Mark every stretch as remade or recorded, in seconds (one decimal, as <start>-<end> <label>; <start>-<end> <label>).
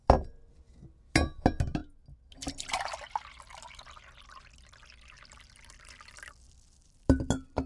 0.0-7.7 recorded